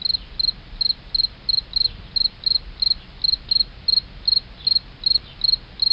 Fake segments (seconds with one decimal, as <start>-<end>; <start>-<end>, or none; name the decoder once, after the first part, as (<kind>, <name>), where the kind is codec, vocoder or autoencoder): none